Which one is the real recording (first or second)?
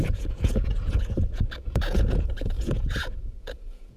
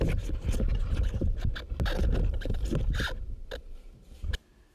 second